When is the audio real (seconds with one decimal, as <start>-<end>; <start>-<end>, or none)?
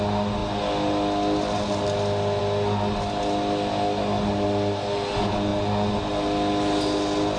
0.0-7.4